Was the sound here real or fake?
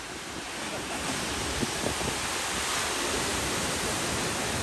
real